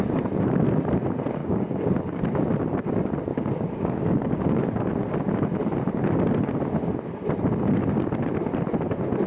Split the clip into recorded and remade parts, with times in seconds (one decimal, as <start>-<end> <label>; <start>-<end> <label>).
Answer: 0.0-1.4 recorded; 1.4-2.2 remade; 2.2-3.3 recorded; 3.3-4.6 remade; 4.6-9.3 recorded